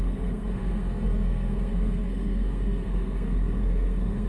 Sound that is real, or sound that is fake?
fake